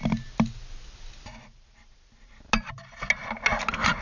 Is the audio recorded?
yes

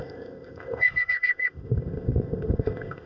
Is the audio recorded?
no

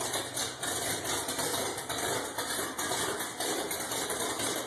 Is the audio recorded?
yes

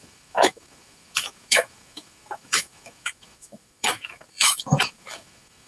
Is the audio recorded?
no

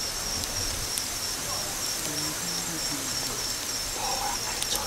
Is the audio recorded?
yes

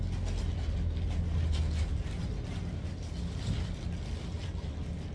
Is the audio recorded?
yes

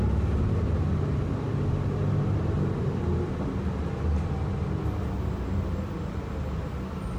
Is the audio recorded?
yes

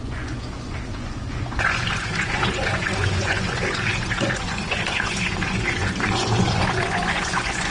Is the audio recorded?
no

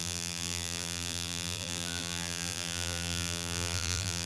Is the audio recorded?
no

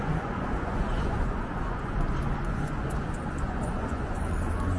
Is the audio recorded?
no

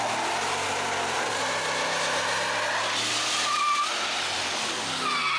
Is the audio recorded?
yes